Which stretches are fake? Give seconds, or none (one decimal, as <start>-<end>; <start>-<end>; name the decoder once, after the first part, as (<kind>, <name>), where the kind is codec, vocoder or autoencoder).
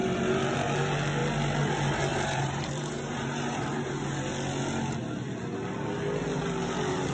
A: 2.1-3.9 (vocoder, BigVGAN v2)